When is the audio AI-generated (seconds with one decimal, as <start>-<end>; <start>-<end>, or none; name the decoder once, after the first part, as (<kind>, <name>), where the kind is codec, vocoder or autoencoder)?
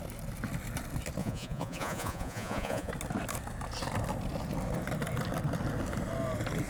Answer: 1.2-2.9 (vocoder, Vocos)